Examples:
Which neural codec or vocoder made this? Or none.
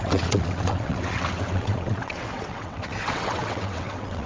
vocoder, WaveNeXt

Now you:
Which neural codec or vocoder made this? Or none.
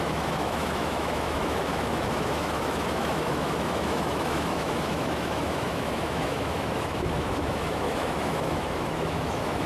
autoencoder, DAC-VAE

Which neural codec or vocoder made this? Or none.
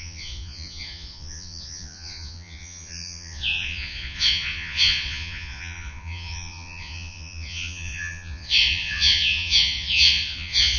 vocoder, Vocos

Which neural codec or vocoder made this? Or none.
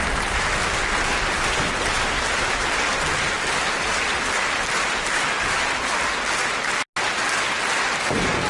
none